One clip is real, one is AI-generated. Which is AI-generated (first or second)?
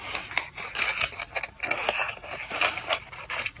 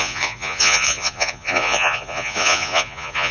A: second